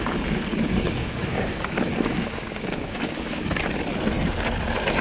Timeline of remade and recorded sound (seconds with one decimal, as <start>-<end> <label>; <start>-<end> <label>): 0.0-0.5 recorded; 0.5-3.5 remade; 3.5-5.0 recorded